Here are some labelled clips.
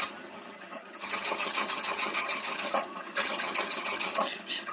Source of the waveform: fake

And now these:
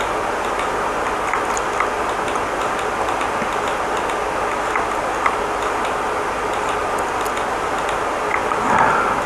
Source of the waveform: real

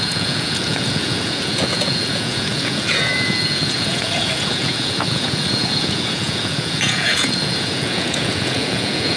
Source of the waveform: fake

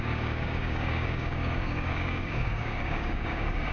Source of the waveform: fake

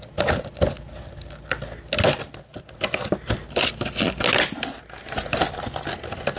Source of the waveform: real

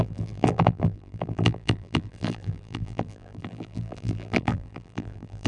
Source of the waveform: fake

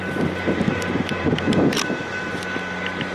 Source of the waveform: fake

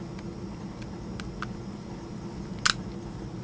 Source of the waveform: real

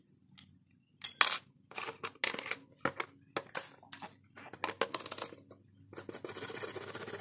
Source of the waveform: real